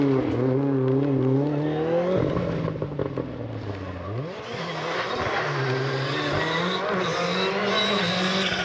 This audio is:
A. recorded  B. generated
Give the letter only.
A